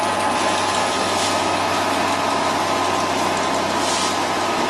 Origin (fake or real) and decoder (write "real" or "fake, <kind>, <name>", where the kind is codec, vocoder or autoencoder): real